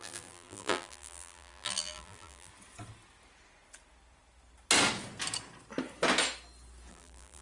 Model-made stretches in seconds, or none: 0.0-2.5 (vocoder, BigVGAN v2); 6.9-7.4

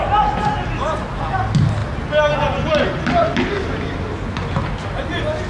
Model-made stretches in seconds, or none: none

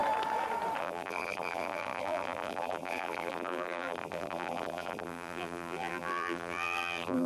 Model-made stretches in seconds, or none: 0.8-7.3 (vocoder, BigVGAN v2)

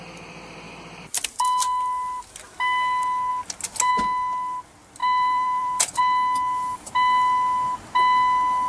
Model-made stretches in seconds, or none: 5.0-6.0 (vocoder, BigVGAN v2)

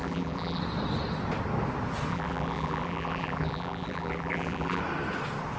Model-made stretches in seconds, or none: 0.0-0.6 (vocoder, BigVGAN v2); 2.1-4.8

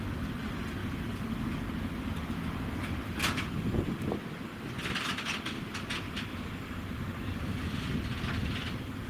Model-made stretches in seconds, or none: 0.8-3.9 (vocoder, BigVGAN v2)

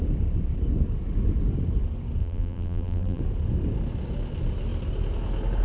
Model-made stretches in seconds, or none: 2.2-3.2 (vocoder, BigVGAN v2)